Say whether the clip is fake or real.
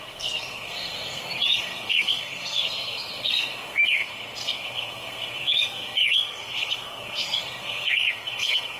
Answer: fake